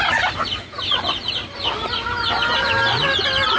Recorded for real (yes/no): yes